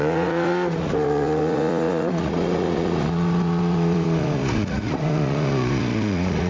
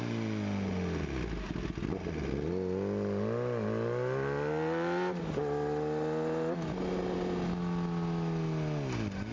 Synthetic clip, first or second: first